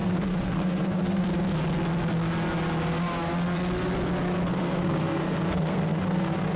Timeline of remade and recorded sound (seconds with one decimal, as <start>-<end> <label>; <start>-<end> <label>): 0.0-1.2 remade; 1.2-4.5 recorded; 4.5-6.6 remade